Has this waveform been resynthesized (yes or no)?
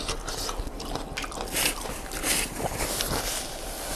no